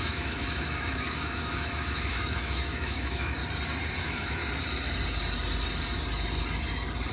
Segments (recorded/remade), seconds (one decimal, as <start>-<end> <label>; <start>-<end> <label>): 0.0-3.4 remade; 3.4-4.0 recorded; 4.0-4.4 remade; 4.4-7.1 recorded